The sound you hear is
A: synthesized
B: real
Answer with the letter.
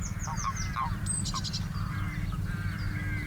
B